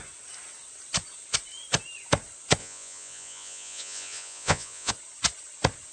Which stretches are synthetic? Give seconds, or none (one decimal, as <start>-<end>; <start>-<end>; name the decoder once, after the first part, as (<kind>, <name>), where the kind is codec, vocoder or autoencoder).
2.6-4.9 (vocoder, Vocos)